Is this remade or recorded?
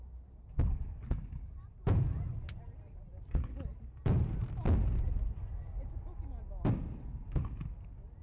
recorded